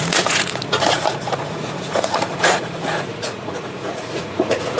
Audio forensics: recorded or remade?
remade